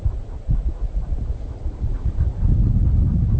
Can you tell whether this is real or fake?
real